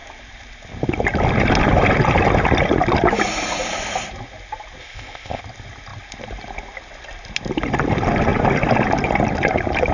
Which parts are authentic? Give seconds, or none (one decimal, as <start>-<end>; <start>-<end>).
0.0-4.8; 5.4-9.9

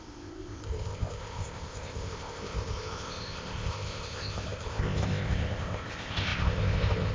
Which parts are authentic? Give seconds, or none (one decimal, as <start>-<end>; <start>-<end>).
none

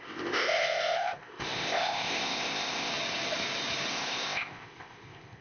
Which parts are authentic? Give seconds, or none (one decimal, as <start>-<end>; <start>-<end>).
2.9-3.9

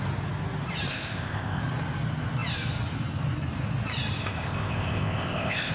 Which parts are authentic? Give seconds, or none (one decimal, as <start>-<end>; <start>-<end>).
0.0-0.9; 1.6-4.2

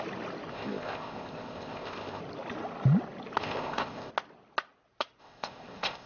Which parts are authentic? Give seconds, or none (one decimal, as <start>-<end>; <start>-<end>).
0.0-0.5; 2.2-3.4; 4.1-5.2

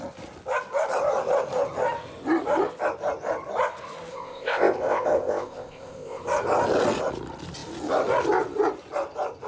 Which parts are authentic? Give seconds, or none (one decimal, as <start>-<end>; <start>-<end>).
0.0-4.1; 6.2-9.5

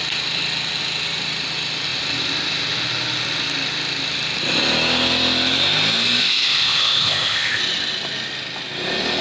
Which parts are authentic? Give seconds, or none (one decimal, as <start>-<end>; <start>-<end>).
0.0-6.2; 7.6-9.2